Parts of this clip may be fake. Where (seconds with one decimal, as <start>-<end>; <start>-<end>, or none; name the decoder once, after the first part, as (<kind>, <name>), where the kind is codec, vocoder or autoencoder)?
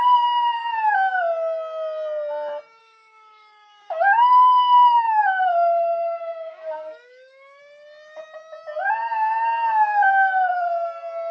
2.8-7.6 (codec, DAC)